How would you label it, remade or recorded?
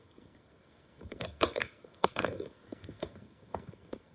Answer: remade